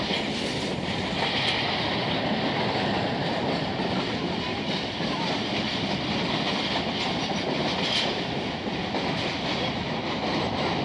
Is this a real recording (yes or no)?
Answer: yes